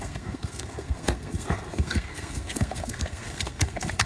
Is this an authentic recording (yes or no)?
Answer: no